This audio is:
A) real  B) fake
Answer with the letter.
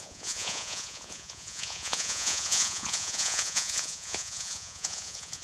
B